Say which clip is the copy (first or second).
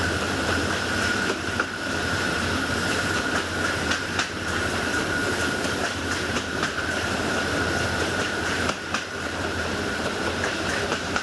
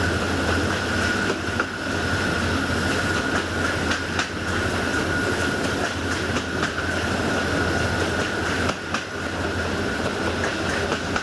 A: first